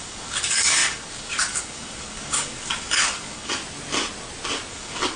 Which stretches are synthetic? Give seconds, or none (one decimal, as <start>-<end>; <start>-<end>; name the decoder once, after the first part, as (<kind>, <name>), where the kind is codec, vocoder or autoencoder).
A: 0.0-3.6 (codec, DAC); 4.7-5.2